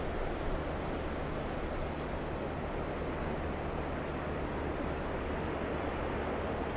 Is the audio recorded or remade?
recorded